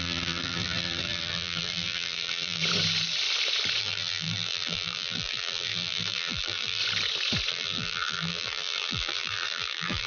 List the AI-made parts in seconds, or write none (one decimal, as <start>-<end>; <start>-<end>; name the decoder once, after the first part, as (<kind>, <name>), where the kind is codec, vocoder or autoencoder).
0.0-2.6 (vocoder, BigVGAN v2); 3.8-6.8; 7.5-10.1